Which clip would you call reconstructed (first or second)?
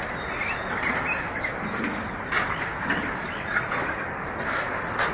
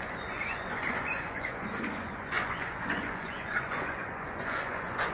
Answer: second